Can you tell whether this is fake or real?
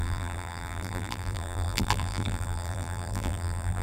fake